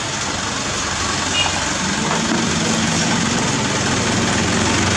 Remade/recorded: recorded